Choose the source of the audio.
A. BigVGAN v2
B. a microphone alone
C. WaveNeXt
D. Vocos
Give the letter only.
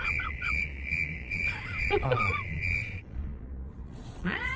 D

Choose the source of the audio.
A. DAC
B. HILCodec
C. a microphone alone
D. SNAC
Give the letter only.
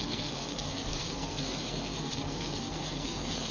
D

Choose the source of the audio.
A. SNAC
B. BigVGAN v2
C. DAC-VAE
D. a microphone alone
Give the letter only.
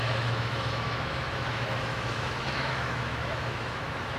C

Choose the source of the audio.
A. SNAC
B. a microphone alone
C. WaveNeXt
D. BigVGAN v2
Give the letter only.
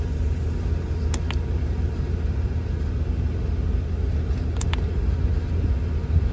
B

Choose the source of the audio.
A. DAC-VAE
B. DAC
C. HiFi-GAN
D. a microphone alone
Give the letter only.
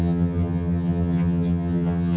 C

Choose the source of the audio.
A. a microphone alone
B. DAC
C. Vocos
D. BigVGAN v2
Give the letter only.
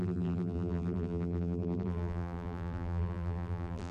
D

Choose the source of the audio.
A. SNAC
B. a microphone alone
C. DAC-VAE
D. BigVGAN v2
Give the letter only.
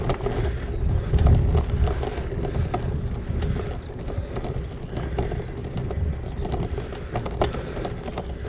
B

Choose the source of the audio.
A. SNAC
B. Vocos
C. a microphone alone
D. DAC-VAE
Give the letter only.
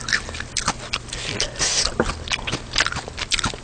C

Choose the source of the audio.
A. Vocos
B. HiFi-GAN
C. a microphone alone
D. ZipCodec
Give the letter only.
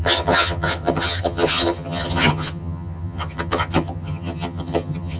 B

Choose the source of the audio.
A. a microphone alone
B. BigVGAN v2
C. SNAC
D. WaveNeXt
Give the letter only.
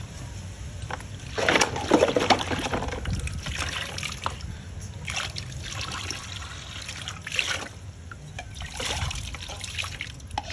A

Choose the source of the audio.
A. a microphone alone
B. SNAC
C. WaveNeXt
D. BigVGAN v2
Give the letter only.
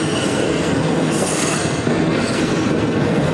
B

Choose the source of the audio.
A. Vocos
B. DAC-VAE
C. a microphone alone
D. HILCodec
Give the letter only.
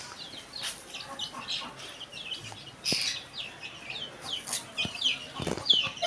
C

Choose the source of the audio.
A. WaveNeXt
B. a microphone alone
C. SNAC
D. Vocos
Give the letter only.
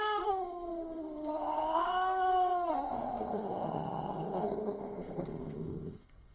C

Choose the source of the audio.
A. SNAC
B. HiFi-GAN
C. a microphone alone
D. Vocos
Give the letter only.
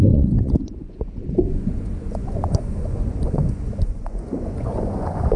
D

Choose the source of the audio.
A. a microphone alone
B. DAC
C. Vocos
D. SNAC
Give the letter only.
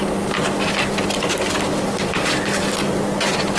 A